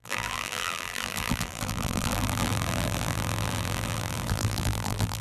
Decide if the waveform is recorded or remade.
remade